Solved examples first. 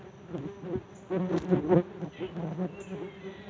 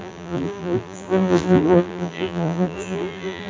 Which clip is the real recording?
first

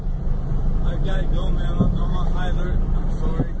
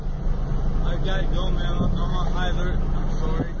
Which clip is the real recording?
second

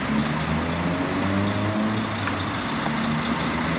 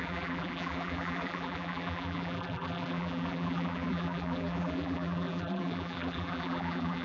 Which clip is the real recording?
first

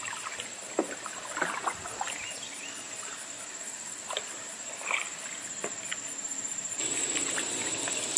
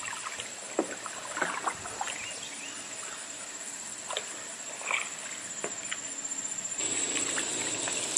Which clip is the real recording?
second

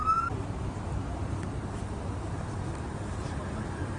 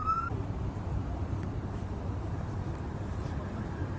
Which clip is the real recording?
first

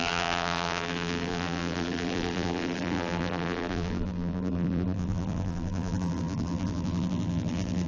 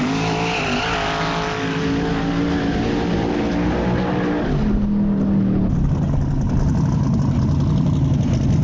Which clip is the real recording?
second